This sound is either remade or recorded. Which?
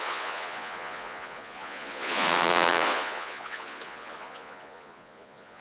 remade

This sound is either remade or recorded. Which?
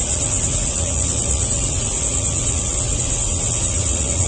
remade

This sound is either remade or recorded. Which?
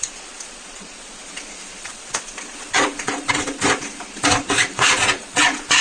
remade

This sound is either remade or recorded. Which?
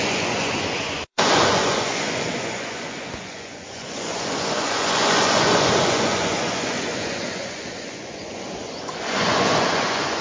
remade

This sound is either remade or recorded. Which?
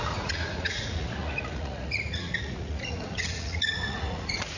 remade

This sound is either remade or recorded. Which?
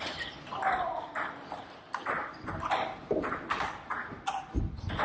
recorded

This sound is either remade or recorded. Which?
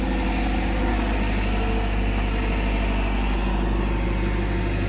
recorded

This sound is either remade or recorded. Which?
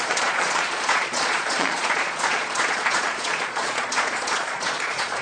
remade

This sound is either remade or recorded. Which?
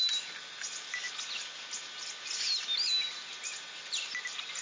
recorded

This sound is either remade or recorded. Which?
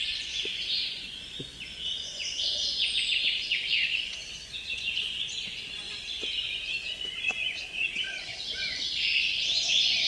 remade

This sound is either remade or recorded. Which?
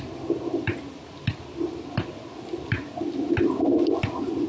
recorded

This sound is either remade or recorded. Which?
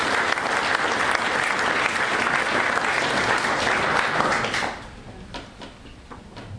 recorded